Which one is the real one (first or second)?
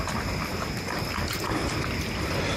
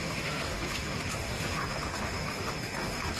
first